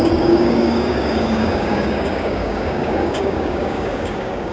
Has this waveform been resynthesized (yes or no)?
yes